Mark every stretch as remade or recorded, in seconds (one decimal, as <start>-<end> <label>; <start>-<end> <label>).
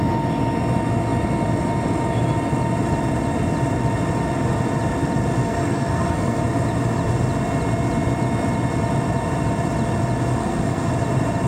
0.0-5.4 recorded; 5.4-6.4 remade; 6.4-10.4 recorded; 10.4-10.9 remade; 10.9-11.5 recorded